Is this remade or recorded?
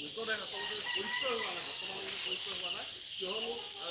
recorded